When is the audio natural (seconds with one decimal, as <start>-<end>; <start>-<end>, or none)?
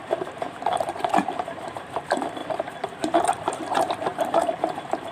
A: none